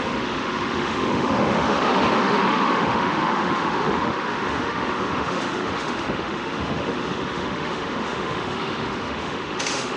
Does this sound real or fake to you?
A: fake